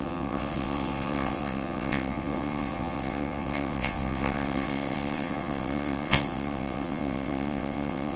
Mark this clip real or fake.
fake